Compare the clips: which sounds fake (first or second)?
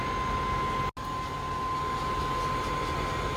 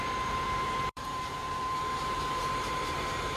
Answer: second